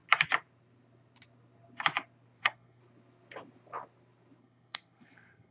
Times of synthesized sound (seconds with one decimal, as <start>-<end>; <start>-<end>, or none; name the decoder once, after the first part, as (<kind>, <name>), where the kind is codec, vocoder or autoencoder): 2.4-2.8 (codec, SNAC); 4.4-5.5